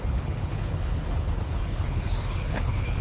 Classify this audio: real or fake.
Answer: fake